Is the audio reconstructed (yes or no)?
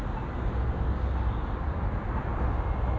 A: no